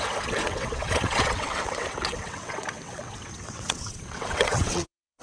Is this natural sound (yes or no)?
no